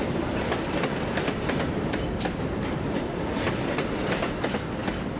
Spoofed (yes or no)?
no